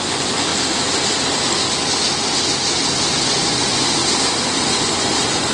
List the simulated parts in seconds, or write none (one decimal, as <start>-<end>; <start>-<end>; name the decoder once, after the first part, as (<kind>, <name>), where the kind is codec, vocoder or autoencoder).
0.0-0.5 (vocoder, Vocos); 3.1-4.0; 4.8-5.5